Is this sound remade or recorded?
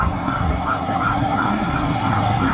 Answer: remade